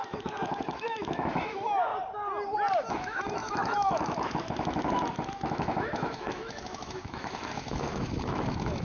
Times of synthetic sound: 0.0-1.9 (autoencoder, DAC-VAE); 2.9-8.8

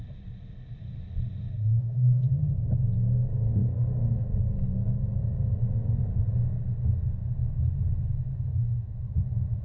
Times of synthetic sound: 1.8-2.5 (vocoder, Vocos); 8.5-9.2

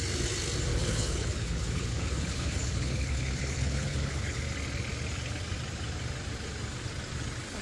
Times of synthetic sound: 0.7-4.4 (codec, HILCodec)

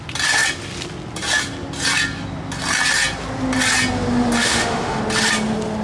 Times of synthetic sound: 4.4-5.0 (autoencoder, DAC-VAE)

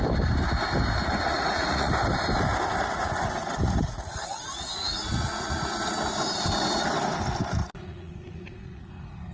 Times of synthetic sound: 1.0-1.9 (vocoder, Vocos); 2.9-5.9; 7.6-8.9

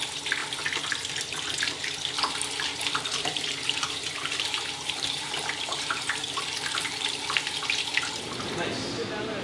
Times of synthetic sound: 2.7-7.4 (vocoder, BigVGAN v2)

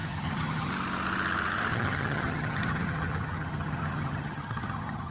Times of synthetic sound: 0.0-0.7 (vocoder, HiFi-GAN); 1.7-5.1

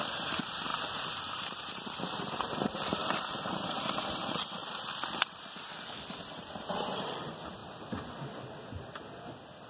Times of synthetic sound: 0.0-4.6 (vocoder, BigVGAN v2); 5.3-7.6